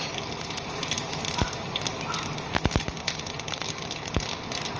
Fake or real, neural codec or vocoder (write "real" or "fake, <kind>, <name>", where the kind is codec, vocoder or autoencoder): real